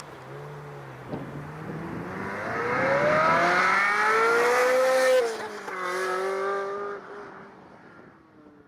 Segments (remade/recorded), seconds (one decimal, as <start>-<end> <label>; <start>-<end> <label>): 0.0-8.7 recorded